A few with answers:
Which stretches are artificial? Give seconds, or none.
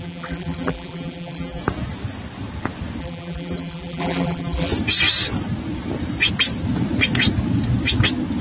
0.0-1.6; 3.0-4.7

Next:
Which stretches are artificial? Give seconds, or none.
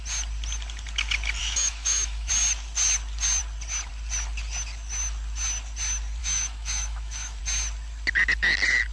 1.4-2.3; 6.2-7.4